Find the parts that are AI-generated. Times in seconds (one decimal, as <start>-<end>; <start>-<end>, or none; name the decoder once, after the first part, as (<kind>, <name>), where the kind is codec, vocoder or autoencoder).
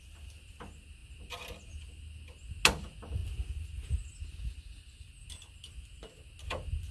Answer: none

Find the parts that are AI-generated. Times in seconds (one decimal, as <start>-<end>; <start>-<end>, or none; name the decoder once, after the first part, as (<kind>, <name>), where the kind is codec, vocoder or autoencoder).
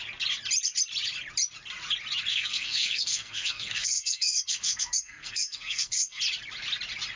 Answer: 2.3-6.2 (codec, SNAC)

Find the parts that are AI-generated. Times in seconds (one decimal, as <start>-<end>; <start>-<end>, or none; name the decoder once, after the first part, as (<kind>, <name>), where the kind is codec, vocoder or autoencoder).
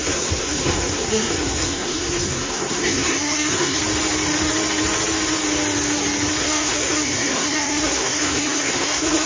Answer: 0.0-3.8 (codec, SNAC); 6.4-9.3